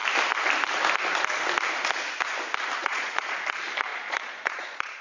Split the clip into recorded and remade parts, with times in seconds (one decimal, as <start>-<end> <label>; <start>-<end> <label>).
0.0-2.8 recorded; 2.8-3.4 remade; 3.4-3.9 recorded; 3.9-5.0 remade